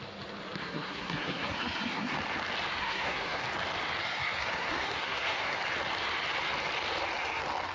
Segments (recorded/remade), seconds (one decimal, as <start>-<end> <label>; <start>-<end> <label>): 0.0-0.6 recorded; 0.6-2.1 remade; 2.1-2.8 recorded; 2.8-3.4 remade; 3.4-4.0 recorded; 4.0-5.6 remade; 5.6-7.7 recorded